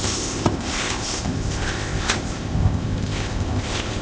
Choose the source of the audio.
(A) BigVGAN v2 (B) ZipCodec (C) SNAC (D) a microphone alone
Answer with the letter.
B